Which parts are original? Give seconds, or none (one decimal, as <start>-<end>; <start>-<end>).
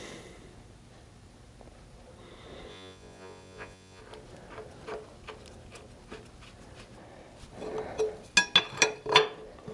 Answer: 0.0-2.7; 4.0-9.7